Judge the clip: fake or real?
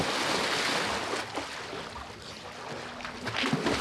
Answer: real